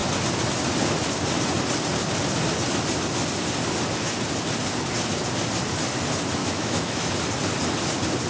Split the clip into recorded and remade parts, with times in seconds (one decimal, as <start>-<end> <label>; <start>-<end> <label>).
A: 0.0-6.4 recorded; 6.4-7.1 remade; 7.1-8.3 recorded